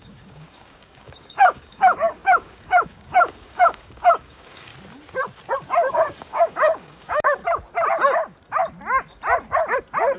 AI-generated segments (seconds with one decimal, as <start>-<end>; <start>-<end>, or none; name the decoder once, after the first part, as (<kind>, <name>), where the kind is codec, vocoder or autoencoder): 0.0-4.7 (codec, DAC); 5.9-7.4